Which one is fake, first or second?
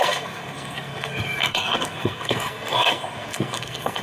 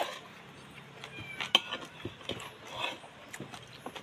first